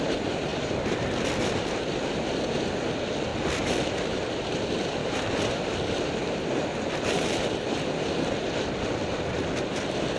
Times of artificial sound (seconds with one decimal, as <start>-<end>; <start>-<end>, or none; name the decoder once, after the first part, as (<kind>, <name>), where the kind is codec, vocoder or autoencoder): 0.0-3.3 (vocoder, BigVGAN v2); 4.0-10.2